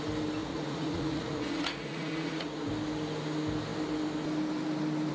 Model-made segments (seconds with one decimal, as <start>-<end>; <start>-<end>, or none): 0.4-2.7